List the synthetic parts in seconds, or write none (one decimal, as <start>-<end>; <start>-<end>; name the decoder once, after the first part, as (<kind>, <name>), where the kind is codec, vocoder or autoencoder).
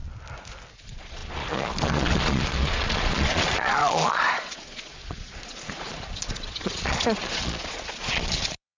0.7-8.8 (vocoder, Vocos)